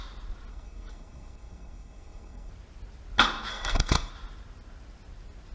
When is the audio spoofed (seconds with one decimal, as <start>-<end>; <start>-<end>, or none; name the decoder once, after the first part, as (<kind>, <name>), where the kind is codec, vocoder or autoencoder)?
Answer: 0.5-2.5 (codec, SNAC); 3.5-4.1